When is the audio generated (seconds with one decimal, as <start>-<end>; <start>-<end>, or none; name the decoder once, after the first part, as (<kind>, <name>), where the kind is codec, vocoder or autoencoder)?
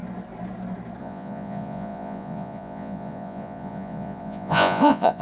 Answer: 1.0-5.2 (vocoder, Vocos)